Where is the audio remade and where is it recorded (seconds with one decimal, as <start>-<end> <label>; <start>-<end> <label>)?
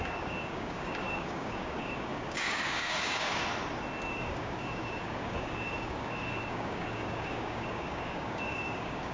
0.0-3.4 remade; 3.4-4.1 recorded; 4.1-9.1 remade